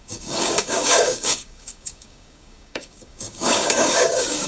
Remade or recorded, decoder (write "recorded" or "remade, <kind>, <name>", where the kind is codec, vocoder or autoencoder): remade, codec, DAC